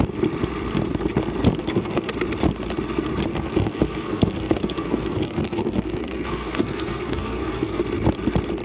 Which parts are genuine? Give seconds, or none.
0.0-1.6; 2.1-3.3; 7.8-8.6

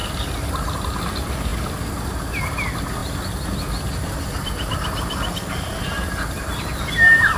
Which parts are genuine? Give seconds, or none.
0.0-7.4

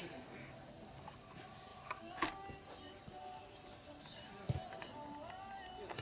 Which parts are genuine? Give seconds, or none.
0.0-6.0

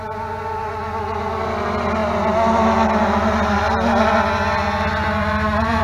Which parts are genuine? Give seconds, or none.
0.0-5.8

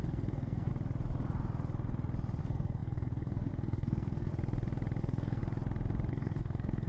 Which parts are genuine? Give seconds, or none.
0.7-2.4; 4.3-5.0; 5.4-6.1

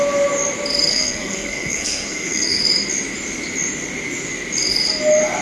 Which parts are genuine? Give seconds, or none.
0.0-0.9; 2.6-5.4

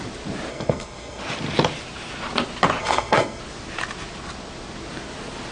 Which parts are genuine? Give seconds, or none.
0.0-0.5; 1.2-2.8; 3.4-5.5